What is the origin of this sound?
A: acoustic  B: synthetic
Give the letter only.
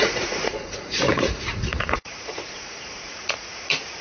B